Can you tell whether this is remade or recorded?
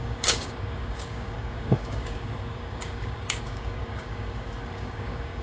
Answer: remade